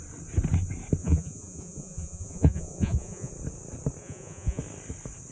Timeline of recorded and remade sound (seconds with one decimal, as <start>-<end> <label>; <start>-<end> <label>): 0.0-1.0 recorded; 1.0-3.3 remade; 3.3-4.0 recorded; 4.0-4.6 remade; 4.6-5.3 recorded